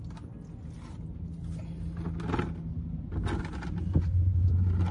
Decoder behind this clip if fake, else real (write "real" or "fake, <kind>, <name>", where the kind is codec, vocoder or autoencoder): real